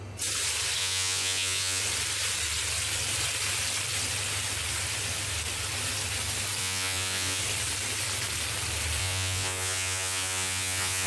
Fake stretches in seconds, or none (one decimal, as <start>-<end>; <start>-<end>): 0.8-1.8; 6.6-7.4; 9.0-11.1